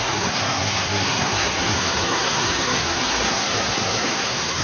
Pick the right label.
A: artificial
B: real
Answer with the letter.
A